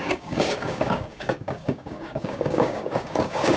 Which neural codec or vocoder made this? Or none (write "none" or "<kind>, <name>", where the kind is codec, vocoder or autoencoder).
codec, DAC